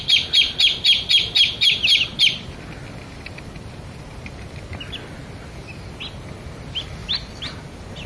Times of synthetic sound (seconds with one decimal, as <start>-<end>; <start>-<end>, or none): none